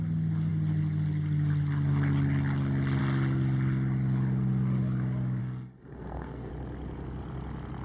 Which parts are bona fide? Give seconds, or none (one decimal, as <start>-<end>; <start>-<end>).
0.0-5.4; 6.5-7.8